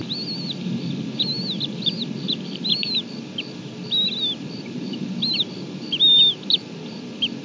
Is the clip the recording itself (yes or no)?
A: yes